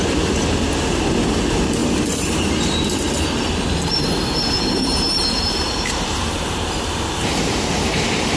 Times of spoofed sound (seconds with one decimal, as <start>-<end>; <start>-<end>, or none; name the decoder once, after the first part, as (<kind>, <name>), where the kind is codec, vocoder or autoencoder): 1.8-2.5 (vocoder, BigVGAN v2); 3.9-8.4